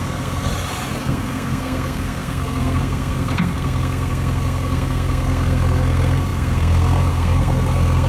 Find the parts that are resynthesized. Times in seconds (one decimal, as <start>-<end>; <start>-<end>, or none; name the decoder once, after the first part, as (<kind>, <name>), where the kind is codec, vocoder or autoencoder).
0.0-0.5 (codec, SNAC); 1.0-8.1